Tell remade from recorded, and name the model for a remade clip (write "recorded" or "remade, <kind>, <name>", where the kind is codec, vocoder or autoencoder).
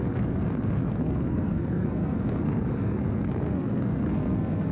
remade, codec, SNAC